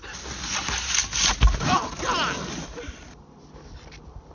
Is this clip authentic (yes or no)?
yes